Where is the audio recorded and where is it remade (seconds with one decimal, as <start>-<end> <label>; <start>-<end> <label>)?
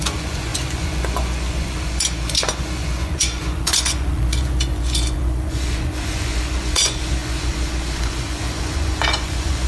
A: 0.0-9.7 remade